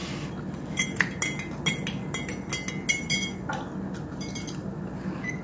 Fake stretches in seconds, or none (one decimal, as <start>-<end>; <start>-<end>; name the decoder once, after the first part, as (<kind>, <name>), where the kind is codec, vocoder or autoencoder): none